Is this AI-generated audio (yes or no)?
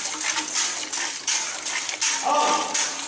no